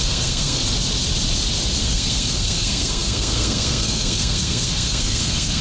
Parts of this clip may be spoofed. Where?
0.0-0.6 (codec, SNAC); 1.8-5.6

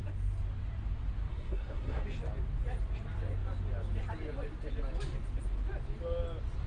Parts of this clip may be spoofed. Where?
1.3-2.0 (codec, SNAC)

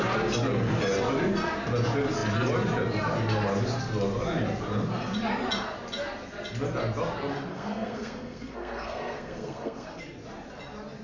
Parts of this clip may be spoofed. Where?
7.5-10.0 (codec, SNAC)

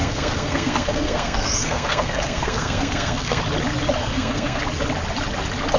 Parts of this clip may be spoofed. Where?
0.0-3.4 (codec, SNAC); 4.0-4.6